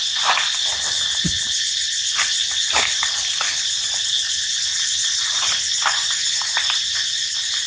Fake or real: real